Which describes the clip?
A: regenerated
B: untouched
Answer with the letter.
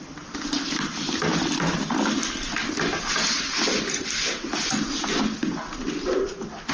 A